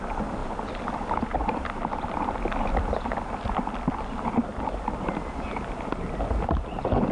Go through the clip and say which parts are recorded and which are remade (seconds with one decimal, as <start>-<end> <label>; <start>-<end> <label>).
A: 0.0-7.1 recorded